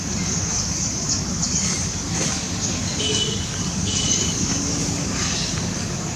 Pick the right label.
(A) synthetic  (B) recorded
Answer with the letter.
A